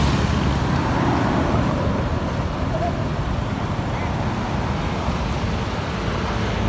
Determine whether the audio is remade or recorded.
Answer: recorded